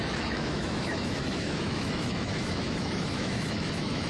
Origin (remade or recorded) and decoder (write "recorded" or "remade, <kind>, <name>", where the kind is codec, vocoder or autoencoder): remade, autoencoder, DAC-VAE